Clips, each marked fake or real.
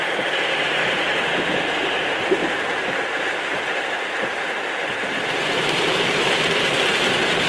fake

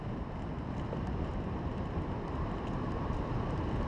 real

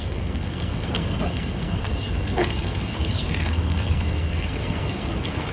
fake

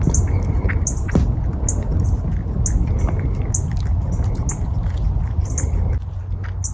real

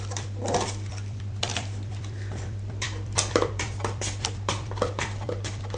fake